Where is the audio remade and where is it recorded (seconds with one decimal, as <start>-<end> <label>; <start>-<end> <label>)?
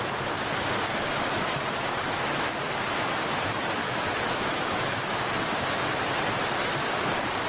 0.0-3.8 recorded; 3.8-5.2 remade; 5.2-7.5 recorded